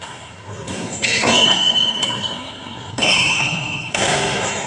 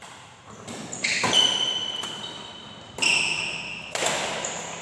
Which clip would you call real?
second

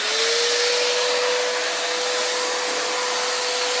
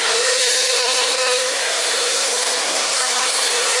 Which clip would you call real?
first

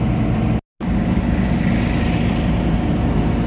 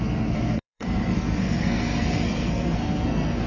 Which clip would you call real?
first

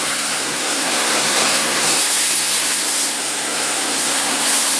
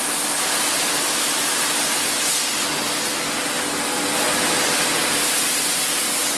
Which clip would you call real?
second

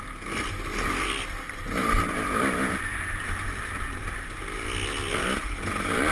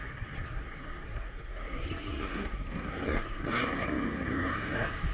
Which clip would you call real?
first